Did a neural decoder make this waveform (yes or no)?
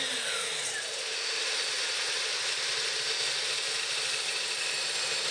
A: no